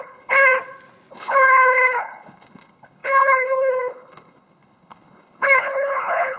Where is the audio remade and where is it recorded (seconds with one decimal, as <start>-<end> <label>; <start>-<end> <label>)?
0.0-0.5 remade; 0.5-1.1 recorded; 1.1-6.4 remade